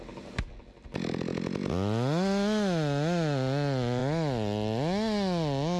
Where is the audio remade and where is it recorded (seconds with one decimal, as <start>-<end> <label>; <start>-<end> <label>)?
0.0-5.8 recorded